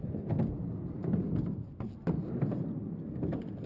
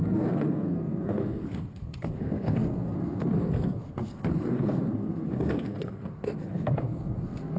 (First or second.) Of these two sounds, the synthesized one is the second